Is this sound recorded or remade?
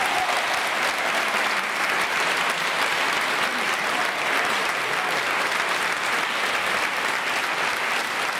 recorded